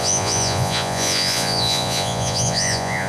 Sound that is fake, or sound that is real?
fake